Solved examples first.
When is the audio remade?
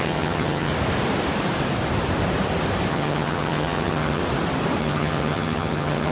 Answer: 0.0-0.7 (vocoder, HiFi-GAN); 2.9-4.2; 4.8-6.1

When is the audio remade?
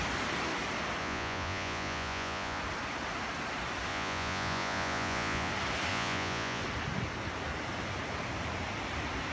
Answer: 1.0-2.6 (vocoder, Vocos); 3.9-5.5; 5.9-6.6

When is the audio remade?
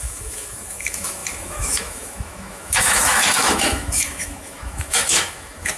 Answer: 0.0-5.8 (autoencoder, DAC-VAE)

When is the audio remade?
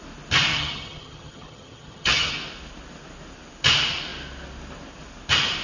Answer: 0.5-2.3 (vocoder, HiFi-GAN)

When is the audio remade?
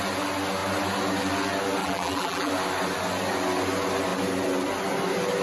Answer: 1.8-2.5 (vocoder, BigVGAN v2)